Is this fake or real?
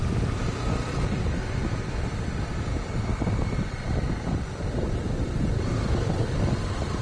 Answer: fake